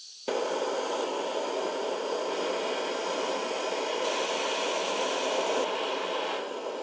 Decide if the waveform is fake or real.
real